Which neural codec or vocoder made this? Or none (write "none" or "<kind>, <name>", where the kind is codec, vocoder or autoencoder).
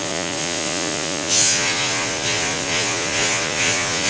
vocoder, Vocos